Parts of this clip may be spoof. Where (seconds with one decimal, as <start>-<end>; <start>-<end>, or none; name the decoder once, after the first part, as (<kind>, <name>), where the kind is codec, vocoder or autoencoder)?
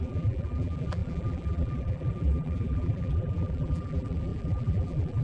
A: 0.0-5.2 (vocoder, BigVGAN v2)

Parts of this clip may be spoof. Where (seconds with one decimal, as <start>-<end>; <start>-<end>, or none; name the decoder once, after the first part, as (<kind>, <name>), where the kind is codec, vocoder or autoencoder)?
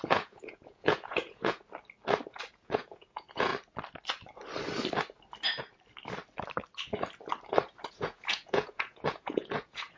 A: 0.0-1.6 (vocoder, Vocos); 2.5-3.5; 7.9-10.0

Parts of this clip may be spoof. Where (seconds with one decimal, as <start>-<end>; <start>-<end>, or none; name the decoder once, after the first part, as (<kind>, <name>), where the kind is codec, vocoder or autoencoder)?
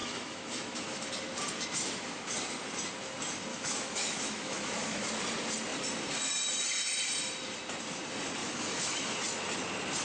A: 0.0-1.1 (autoencoder, DAC-VAE); 3.5-5.1; 8.4-9.0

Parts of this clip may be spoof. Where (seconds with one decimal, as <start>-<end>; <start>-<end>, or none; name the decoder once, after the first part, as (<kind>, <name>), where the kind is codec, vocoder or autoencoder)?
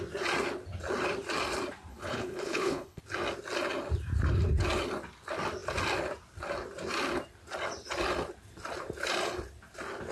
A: 1.9-3.0 (codec, HILCodec)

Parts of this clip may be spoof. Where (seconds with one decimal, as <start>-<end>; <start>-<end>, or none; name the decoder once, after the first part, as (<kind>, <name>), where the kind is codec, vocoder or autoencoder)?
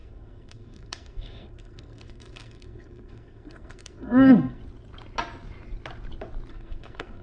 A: 0.0-4.6 (codec, SNAC); 6.5-7.2